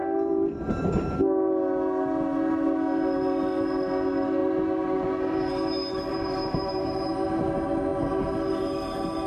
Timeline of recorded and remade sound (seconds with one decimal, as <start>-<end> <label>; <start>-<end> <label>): 0.0-0.8 remade; 0.8-6.1 recorded; 6.1-7.1 remade; 7.1-9.3 recorded